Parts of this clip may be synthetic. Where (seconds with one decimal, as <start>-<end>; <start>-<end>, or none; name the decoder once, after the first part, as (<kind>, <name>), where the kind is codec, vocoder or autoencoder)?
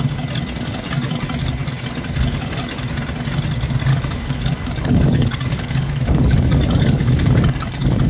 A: 3.9-8.1 (codec, DAC)